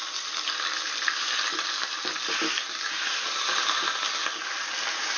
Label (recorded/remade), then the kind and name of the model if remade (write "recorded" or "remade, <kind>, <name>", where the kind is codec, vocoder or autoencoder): recorded